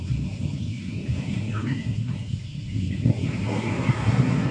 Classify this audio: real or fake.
fake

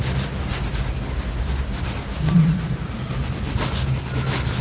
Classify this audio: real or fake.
real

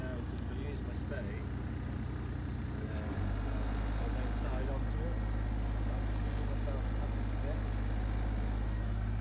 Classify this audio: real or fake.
real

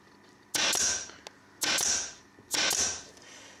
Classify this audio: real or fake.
real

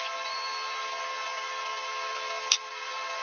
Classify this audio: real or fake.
real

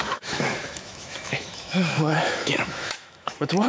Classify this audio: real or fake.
fake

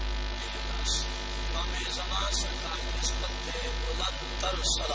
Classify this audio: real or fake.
real